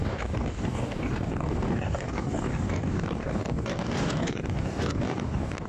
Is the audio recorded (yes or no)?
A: no